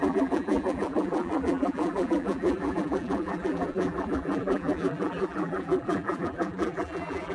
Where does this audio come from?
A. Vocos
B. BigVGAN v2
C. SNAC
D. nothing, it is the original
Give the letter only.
B